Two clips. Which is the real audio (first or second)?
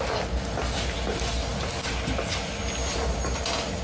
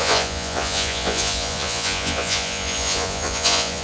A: first